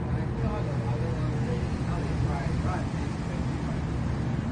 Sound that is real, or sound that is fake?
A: real